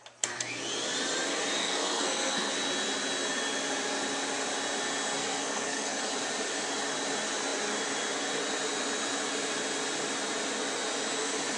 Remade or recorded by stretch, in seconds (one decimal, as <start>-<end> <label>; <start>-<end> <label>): 0.0-1.6 recorded; 1.6-2.5 remade; 2.5-5.2 recorded; 5.2-6.0 remade; 6.0-11.6 recorded